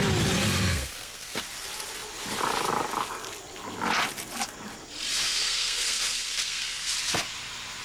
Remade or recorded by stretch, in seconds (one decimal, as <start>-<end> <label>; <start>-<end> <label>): 0.0-0.7 recorded; 0.7-1.4 remade; 1.4-5.3 recorded; 5.3-6.9 remade; 6.9-7.8 recorded